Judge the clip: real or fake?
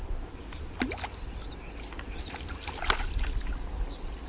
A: real